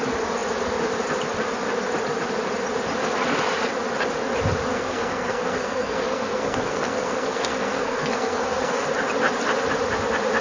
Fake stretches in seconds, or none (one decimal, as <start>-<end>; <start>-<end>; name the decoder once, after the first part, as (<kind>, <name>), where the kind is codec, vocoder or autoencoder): 4.7-8.8 (codec, SNAC)